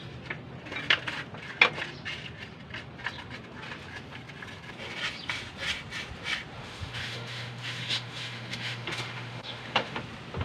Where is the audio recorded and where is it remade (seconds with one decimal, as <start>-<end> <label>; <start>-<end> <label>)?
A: 0.0-6.6 recorded; 6.6-10.0 remade; 10.0-10.4 recorded